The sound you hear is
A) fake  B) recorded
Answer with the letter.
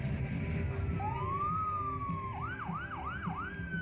B